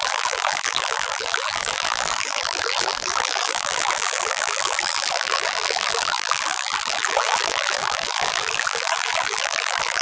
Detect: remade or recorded remade